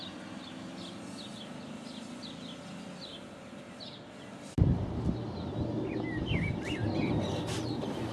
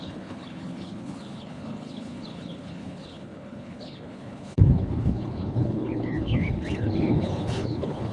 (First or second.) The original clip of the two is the first